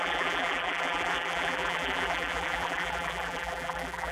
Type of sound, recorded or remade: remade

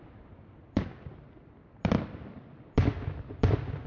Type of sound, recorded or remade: remade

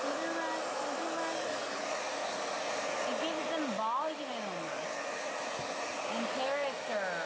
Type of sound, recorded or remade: recorded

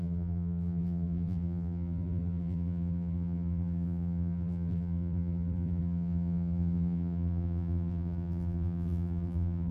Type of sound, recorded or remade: remade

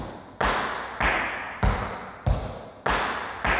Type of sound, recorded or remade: recorded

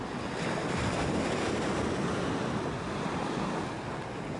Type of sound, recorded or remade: recorded